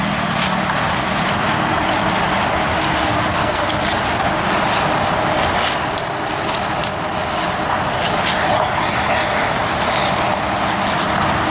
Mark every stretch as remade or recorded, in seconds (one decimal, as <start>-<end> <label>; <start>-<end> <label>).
0.0-3.1 recorded; 3.1-3.7 remade; 3.7-11.5 recorded